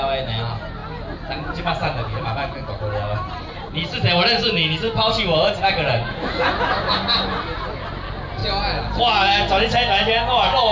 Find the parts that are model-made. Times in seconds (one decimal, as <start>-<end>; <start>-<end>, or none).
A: none